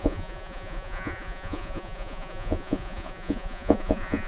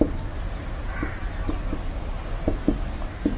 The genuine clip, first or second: second